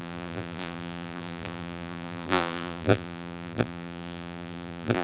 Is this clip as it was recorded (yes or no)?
no